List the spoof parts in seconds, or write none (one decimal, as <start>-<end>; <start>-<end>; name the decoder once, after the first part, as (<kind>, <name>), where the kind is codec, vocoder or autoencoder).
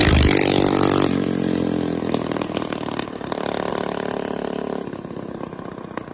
none